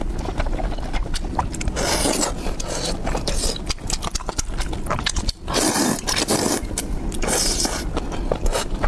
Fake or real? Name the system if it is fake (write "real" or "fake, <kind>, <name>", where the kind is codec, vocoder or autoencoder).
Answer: fake, vocoder, BigVGAN v2